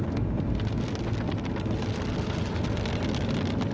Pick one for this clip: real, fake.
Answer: real